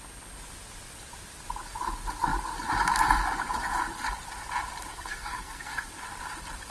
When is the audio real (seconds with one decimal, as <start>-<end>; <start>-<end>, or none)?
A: 0.0-4.9; 5.9-6.7